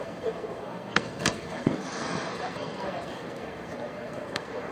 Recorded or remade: remade